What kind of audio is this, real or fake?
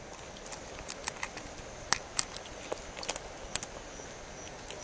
real